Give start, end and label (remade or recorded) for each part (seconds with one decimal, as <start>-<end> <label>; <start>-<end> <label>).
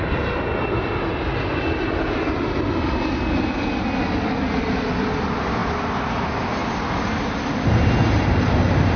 0.0-9.0 recorded